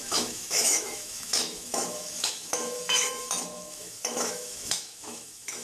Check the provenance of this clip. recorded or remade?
remade